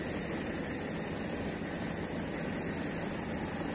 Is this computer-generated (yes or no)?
no